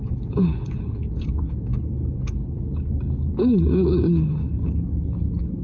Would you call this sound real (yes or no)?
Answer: no